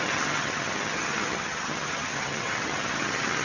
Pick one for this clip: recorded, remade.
remade